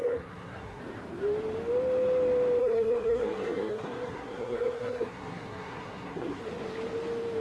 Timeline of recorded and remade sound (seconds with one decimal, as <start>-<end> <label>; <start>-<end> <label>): 0.0-0.8 remade; 0.8-2.6 recorded; 2.6-6.4 remade; 6.4-7.4 recorded